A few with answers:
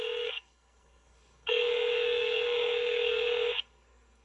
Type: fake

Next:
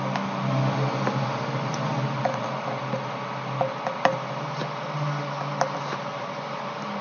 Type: real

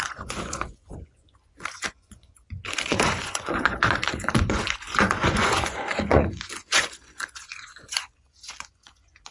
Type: fake